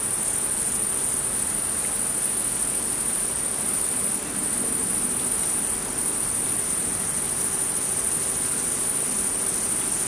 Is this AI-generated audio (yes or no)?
no